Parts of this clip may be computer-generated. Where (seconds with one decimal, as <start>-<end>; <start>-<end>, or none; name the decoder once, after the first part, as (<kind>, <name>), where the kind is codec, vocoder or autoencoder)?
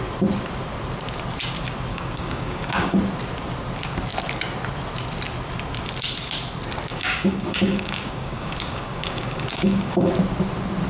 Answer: 1.9-3.0 (codec, DAC); 6.9-10.1